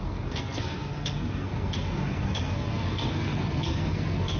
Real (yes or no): no